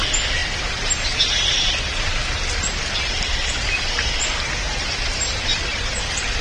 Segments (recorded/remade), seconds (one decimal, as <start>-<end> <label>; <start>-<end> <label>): 0.0-5.5 recorded; 5.5-6.0 remade; 6.0-6.4 recorded